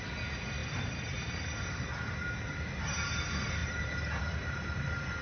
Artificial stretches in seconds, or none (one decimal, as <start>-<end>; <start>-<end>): none